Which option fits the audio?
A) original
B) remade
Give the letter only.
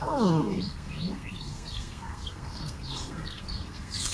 B